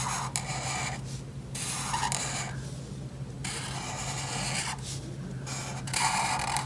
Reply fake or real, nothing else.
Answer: real